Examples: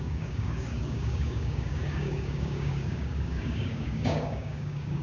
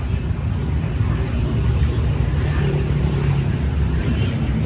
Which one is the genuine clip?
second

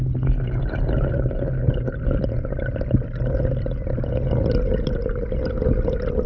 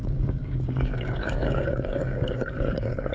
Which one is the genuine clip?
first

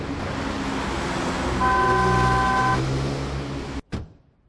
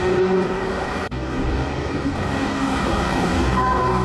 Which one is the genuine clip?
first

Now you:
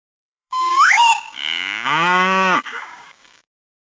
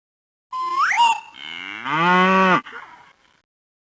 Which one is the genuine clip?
second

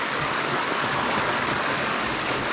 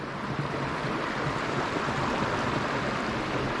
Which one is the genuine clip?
second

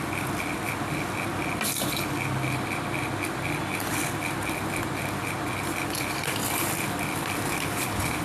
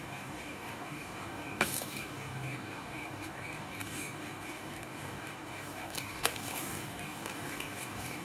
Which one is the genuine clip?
first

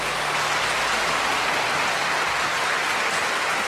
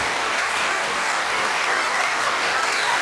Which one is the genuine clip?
first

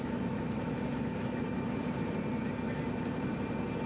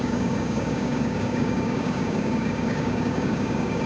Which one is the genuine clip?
first